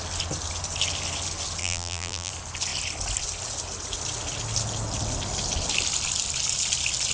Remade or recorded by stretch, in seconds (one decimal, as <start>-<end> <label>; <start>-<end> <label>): 0.0-1.6 recorded; 1.6-2.3 remade; 2.3-7.1 recorded